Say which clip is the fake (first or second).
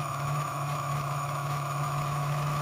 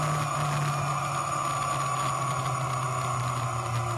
first